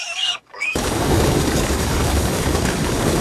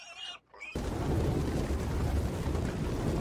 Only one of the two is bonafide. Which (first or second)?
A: second